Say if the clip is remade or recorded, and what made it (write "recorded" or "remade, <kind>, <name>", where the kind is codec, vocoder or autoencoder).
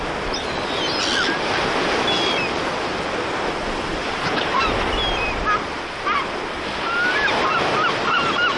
recorded